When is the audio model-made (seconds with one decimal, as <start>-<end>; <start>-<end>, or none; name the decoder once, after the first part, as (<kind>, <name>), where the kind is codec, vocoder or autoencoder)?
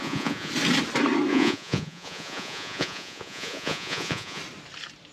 0.0-0.5 (vocoder, Vocos); 1.3-4.4